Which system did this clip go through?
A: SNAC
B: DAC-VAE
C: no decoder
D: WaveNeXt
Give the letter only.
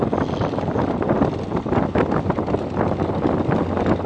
C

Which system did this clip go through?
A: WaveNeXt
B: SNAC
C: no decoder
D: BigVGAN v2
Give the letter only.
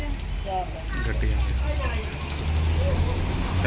C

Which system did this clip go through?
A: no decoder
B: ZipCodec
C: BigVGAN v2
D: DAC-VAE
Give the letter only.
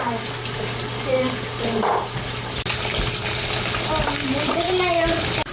A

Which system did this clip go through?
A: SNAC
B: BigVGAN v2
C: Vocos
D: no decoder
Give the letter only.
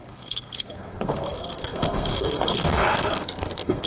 A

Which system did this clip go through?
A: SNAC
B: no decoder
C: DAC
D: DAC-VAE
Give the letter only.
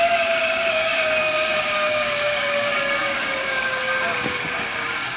C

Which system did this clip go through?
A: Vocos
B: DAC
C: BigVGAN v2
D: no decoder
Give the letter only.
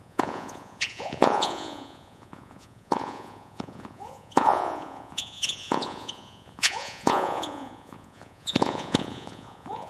A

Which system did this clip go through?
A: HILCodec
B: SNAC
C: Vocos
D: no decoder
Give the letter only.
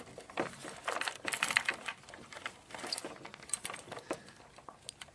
D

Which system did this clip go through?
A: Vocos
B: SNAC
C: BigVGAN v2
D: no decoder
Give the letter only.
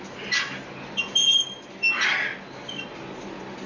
D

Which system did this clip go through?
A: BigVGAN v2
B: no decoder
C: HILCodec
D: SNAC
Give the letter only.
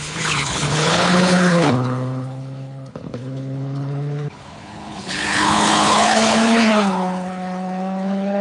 C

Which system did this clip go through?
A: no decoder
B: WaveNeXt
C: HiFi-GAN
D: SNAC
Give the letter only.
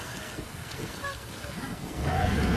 D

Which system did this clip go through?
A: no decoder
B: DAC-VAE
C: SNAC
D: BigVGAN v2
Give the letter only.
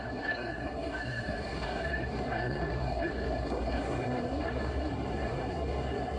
C